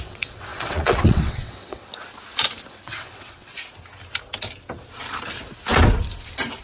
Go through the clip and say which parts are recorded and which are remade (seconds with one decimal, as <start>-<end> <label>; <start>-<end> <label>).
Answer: 0.0-1.9 remade; 1.9-2.7 recorded; 2.7-3.5 remade; 3.5-6.6 recorded